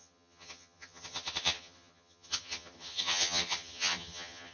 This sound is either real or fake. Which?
fake